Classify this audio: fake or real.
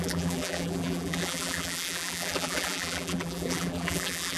fake